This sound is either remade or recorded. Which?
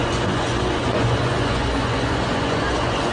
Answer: remade